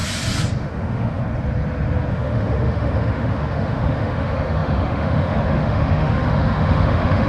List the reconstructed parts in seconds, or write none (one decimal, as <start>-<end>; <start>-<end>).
0.6-1.2; 2.1-7.3